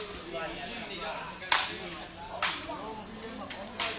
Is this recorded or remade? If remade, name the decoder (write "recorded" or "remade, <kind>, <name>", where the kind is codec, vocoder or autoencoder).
recorded